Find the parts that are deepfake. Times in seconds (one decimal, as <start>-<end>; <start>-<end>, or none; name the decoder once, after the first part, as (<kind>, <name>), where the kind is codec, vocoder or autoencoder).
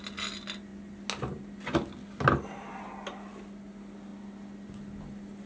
none